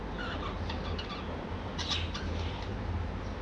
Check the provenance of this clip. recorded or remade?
recorded